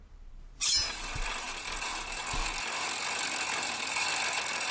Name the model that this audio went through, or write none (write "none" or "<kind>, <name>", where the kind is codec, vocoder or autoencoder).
none